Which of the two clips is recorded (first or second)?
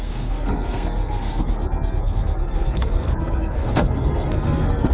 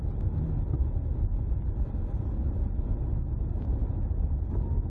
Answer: second